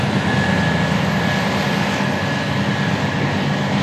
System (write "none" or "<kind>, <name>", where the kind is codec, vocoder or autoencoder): none